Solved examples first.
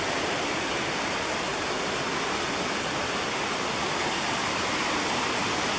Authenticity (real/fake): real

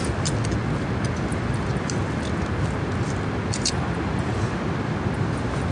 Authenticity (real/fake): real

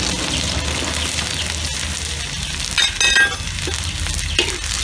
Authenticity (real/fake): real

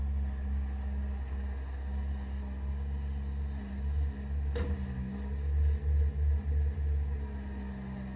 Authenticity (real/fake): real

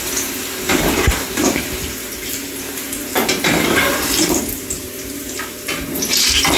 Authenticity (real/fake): fake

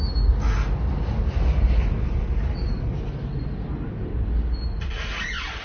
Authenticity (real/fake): real